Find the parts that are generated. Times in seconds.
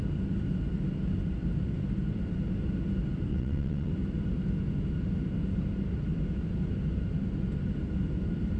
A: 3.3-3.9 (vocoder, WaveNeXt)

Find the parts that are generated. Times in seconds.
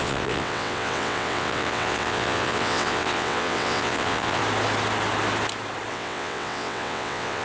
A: 0.0-4.4 (vocoder, WaveNeXt); 5.9-7.4